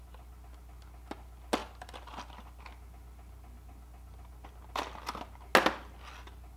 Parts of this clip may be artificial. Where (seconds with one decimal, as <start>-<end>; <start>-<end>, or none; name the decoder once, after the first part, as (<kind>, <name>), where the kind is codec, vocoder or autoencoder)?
1.6-2.6 (vocoder, BigVGAN v2)